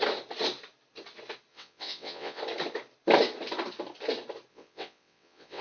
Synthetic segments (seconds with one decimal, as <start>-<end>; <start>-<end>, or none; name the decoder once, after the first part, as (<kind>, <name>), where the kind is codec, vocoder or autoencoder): 1.5-2.4 (vocoder, WaveNeXt); 4.5-5.6